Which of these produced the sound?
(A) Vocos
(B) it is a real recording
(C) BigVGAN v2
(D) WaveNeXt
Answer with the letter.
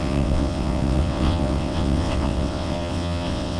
D